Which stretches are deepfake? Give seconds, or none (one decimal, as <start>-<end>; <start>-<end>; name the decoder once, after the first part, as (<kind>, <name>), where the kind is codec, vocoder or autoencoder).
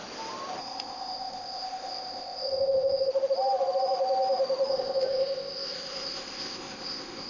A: 0.6-3.1 (codec, ZipCodec); 4.7-7.3